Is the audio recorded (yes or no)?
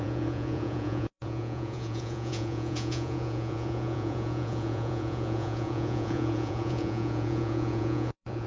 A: no